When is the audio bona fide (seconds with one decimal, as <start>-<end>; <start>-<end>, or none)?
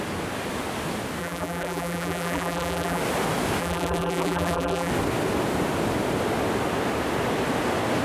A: 0.0-1.2; 3.0-3.6; 4.9-8.0